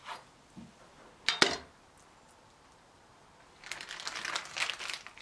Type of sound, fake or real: real